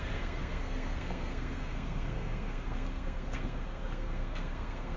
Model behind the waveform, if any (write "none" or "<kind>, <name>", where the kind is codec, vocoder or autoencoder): codec, SNAC